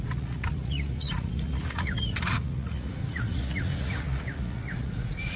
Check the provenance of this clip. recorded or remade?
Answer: remade